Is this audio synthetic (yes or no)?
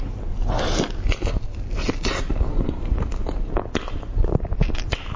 no